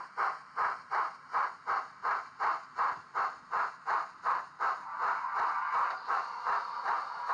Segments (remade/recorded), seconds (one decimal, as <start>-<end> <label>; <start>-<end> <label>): 0.0-1.3 remade; 1.3-3.7 recorded; 3.7-5.0 remade; 5.0-6.0 recorded; 6.0-7.3 remade